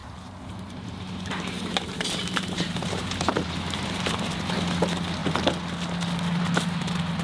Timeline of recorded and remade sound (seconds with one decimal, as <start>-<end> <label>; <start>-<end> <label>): 0.0-4.3 remade; 4.3-7.2 recorded